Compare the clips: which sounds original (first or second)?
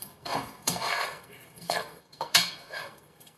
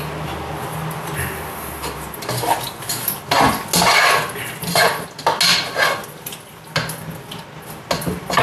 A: second